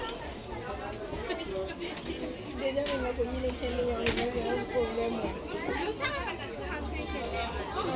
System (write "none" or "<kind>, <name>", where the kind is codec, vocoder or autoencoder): none